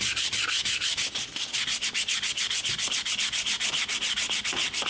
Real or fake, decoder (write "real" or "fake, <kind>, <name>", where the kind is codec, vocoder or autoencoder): real